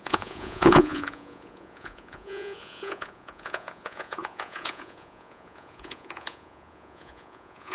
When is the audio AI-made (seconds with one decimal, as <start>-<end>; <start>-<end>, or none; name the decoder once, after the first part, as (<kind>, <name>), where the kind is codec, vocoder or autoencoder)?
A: 0.0-7.7 (vocoder, Vocos)